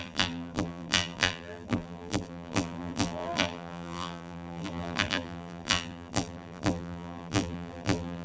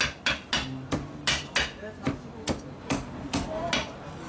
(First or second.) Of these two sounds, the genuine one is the second